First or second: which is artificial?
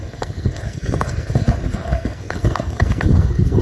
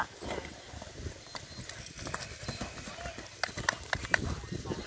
first